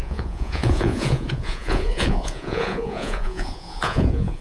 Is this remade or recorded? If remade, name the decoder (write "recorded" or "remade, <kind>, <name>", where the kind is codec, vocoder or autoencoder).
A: remade, vocoder, Vocos